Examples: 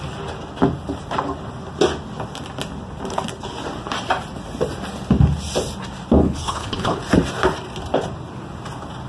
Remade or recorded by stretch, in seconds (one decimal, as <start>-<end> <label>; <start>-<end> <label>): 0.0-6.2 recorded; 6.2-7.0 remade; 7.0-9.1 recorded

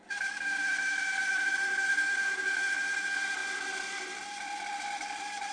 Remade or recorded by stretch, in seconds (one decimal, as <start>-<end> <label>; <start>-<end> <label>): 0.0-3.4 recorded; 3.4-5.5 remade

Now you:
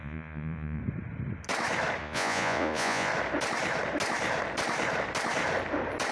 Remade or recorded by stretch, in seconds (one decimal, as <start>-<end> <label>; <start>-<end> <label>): 0.0-0.8 remade; 0.8-2.0 recorded; 2.0-3.1 remade; 3.1-6.1 recorded

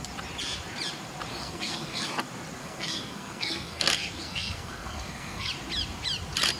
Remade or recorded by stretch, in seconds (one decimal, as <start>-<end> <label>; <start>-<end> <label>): 0.0-1.3 recorded; 1.3-2.1 remade; 2.1-2.6 recorded; 2.6-5.5 remade; 5.5-6.6 recorded

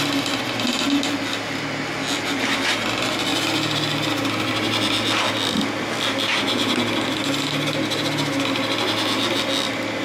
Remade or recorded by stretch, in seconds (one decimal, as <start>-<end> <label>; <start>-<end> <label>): 0.0-10.0 recorded